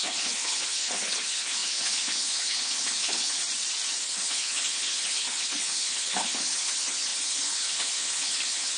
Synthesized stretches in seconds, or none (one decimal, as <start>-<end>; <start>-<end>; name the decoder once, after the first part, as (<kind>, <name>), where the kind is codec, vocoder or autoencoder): 0.0-3.4 (codec, HILCodec); 4.0-8.8